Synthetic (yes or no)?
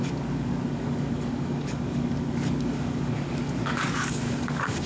yes